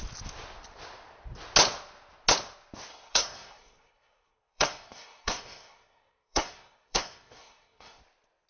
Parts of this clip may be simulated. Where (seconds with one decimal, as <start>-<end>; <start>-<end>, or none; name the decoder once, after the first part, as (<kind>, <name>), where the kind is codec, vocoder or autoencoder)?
2.9-8.0 (codec, SNAC)